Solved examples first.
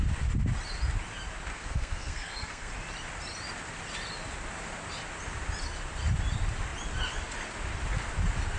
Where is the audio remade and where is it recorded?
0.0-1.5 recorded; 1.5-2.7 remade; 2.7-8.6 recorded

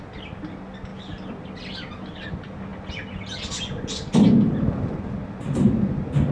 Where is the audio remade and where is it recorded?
0.0-6.3 recorded

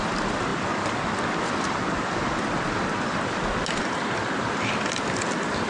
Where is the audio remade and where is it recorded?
0.0-5.7 recorded

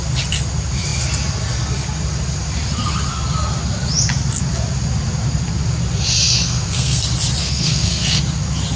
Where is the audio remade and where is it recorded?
0.0-6.4 recorded; 6.4-7.0 remade; 7.0-7.4 recorded; 7.4-8.2 remade; 8.2-8.8 recorded

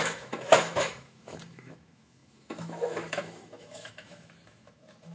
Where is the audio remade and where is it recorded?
0.0-5.1 remade

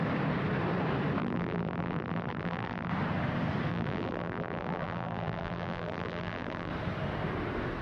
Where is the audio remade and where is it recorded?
0.0-1.2 recorded; 1.2-2.9 remade; 2.9-3.7 recorded; 3.7-6.7 remade; 6.7-7.8 recorded